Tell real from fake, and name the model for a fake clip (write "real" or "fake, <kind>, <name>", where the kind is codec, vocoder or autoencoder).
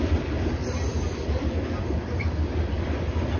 fake, vocoder, BigVGAN v2